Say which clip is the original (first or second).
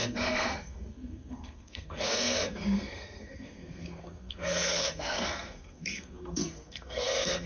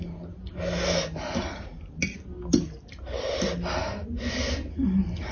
second